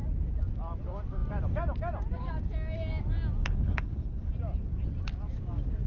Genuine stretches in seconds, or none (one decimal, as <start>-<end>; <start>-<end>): 0.0-3.4; 4.3-5.9